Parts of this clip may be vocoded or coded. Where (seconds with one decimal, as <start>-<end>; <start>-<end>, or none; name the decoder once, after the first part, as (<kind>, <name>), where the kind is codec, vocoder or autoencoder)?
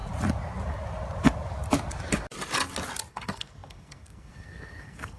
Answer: 3.1-5.2 (codec, SNAC)